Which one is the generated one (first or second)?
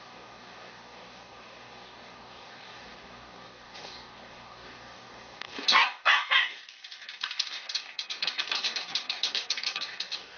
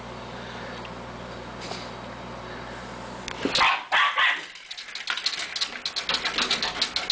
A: first